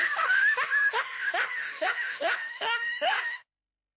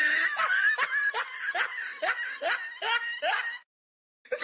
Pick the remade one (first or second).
first